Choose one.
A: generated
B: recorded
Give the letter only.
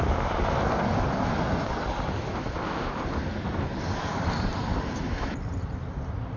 B